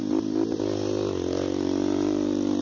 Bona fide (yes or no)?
yes